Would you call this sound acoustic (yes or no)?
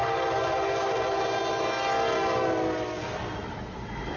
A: yes